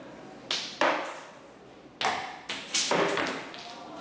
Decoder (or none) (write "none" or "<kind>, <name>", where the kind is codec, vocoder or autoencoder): none